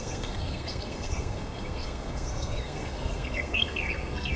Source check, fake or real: fake